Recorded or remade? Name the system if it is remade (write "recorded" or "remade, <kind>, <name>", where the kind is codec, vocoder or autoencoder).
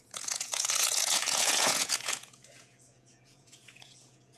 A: remade, vocoder, Vocos